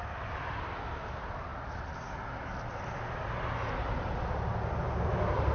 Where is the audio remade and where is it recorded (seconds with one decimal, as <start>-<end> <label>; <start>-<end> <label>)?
0.0-5.5 recorded